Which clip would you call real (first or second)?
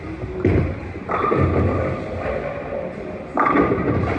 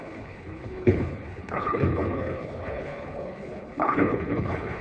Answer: first